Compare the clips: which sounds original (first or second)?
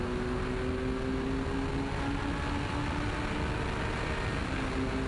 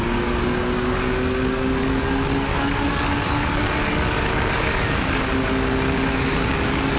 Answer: first